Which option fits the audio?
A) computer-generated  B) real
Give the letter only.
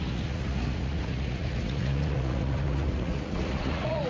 A